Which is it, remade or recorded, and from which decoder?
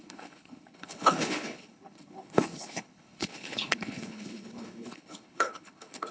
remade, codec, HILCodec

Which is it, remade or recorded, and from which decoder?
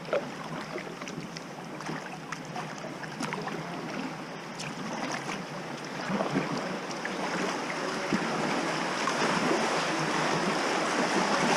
recorded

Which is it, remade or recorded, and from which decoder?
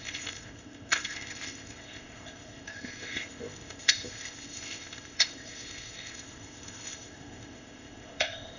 remade, codec, ZipCodec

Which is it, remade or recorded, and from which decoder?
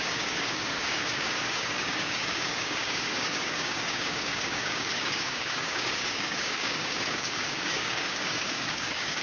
remade, codec, DAC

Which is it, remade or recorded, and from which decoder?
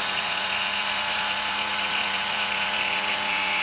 remade, vocoder, Vocos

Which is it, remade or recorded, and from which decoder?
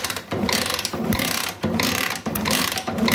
remade, vocoder, BigVGAN v2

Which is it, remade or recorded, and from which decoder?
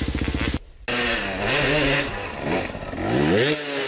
recorded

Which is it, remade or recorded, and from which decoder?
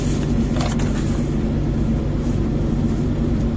recorded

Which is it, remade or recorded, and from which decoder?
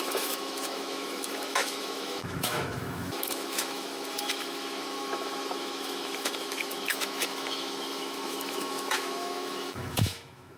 remade, autoencoder, DAC-VAE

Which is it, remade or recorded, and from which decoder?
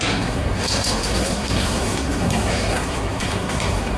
remade, codec, SNAC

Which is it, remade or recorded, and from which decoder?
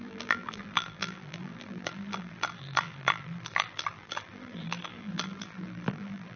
remade, vocoder, BigVGAN v2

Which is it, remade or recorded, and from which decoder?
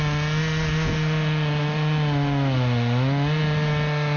recorded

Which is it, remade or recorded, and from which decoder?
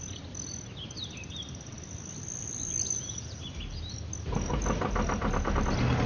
recorded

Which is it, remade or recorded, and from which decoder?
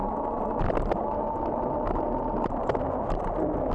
recorded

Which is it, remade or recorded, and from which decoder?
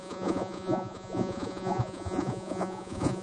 remade, vocoder, Vocos